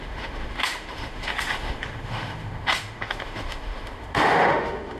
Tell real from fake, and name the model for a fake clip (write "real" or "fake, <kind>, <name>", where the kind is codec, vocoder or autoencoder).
fake, autoencoder, DAC-VAE